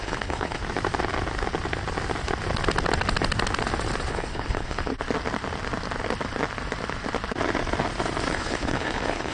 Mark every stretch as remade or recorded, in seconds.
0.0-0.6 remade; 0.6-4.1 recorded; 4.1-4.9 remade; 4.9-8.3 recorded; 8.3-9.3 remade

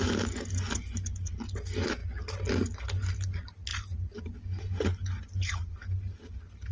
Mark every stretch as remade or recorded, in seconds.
0.0-6.7 recorded

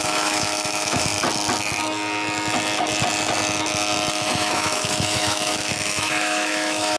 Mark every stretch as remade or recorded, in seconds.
0.0-1.1 remade; 1.1-4.1 recorded; 4.1-7.0 remade